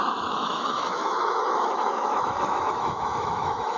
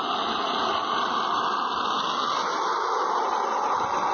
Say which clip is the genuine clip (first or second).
second